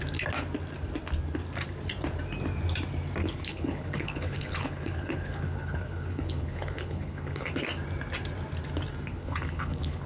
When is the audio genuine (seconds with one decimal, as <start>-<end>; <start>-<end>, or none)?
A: 0.0-3.2; 7.5-9.1